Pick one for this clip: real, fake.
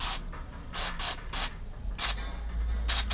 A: real